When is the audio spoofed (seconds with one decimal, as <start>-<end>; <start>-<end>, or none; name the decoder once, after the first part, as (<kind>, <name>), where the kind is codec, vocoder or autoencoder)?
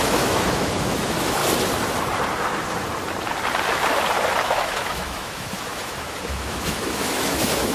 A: 0.0-1.4 (autoencoder, DAC-VAE); 4.4-7.7